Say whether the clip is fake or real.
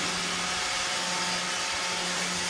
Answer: real